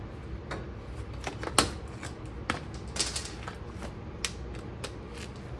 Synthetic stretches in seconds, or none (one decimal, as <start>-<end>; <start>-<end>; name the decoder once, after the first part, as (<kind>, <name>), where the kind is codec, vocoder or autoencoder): none